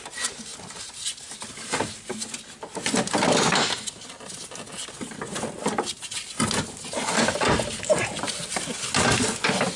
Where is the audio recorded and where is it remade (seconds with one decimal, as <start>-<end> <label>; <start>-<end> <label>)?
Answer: 0.0-9.8 recorded